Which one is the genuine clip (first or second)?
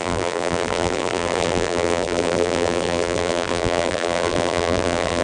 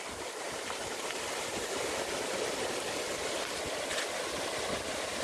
second